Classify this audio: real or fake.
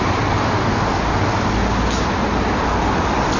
real